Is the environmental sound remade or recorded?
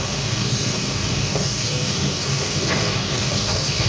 remade